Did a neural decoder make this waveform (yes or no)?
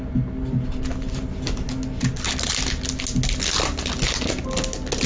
no